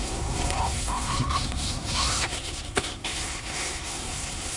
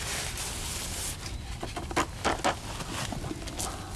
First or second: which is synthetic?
first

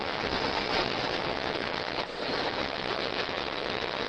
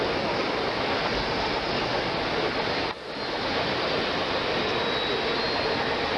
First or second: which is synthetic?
first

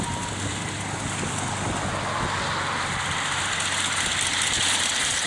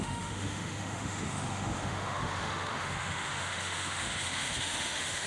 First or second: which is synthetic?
second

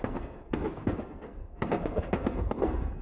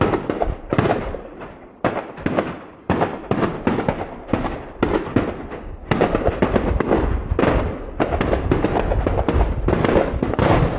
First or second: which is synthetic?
first